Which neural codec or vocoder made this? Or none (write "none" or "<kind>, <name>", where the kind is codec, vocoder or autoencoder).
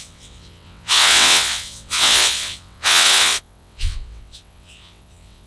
vocoder, WaveNeXt